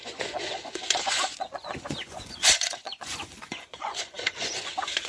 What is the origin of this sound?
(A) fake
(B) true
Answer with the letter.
A